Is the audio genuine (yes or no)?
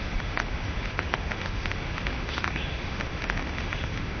no